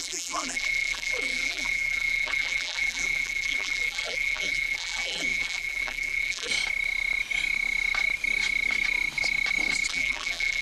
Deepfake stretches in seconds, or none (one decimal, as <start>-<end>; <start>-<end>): 0.0-6.5; 9.9-10.6